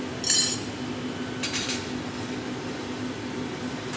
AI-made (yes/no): no